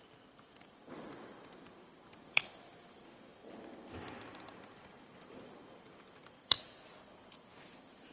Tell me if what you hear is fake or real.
real